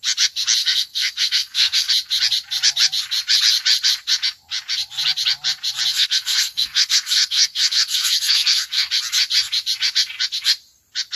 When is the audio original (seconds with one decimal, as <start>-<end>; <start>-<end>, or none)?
0.0-0.6; 1.9-5.9; 8.9-11.2